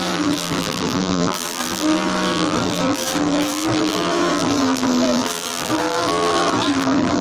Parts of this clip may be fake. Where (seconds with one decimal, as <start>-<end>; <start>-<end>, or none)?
0.0-7.2